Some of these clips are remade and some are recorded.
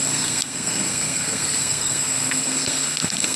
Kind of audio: remade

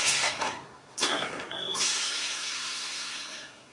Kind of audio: remade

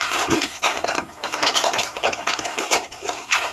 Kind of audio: remade